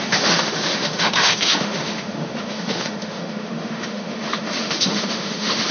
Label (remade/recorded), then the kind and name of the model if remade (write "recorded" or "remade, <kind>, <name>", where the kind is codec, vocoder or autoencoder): remade, autoencoder, DAC-VAE